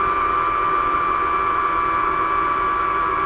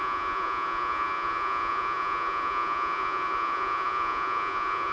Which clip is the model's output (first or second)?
second